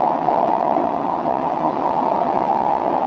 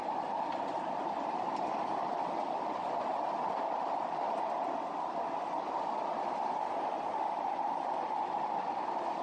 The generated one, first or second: first